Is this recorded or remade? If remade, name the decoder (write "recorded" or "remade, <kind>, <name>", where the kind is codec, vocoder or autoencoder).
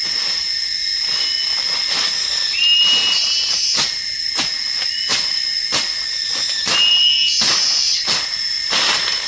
recorded